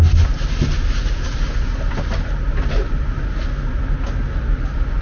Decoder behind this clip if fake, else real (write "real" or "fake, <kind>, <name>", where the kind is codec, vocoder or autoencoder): real